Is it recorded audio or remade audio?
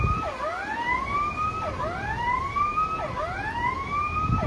recorded